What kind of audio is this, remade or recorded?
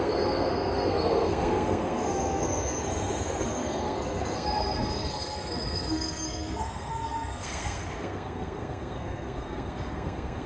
remade